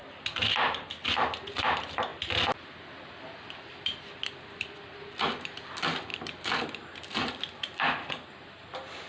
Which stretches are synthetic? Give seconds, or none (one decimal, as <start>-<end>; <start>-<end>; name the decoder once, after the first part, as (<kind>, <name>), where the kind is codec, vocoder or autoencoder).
6.1-6.7 (vocoder, BigVGAN v2); 7.2-9.1